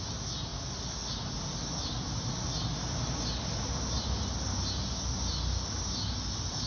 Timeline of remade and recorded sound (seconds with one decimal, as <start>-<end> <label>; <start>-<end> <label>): 0.0-6.7 recorded